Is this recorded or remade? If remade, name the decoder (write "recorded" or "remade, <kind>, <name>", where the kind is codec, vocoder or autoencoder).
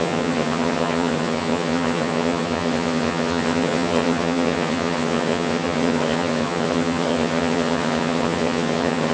remade, vocoder, HiFi-GAN